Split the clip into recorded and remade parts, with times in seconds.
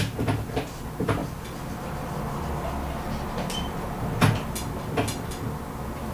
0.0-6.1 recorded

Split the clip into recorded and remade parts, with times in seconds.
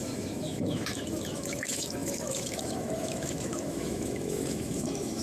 0.0-5.2 remade